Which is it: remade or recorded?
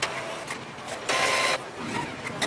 recorded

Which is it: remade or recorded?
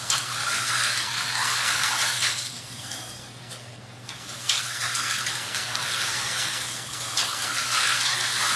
remade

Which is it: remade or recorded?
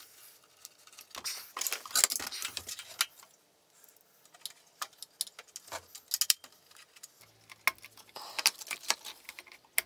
recorded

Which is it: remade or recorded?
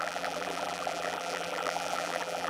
remade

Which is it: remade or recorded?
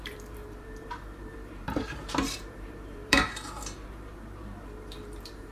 remade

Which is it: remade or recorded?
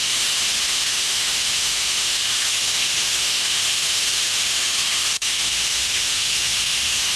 remade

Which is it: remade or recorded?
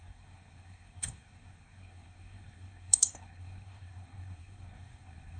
remade